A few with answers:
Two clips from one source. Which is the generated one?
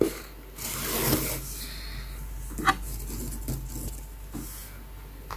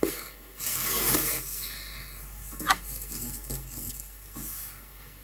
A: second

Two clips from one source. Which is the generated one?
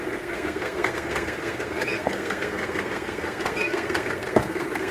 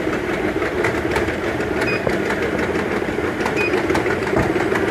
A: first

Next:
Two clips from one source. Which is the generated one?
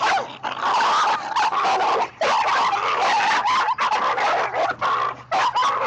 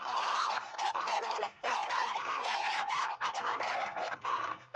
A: second